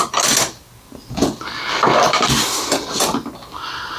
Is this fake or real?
real